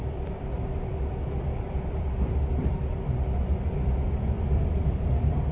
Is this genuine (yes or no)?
no